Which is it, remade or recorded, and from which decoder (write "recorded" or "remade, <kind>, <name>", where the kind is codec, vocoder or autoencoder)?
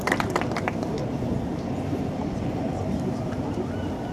recorded